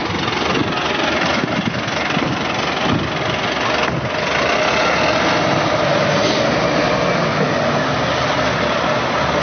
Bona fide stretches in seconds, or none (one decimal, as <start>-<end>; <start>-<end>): 0.0-9.4